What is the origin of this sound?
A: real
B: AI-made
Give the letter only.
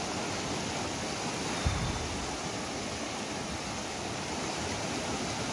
A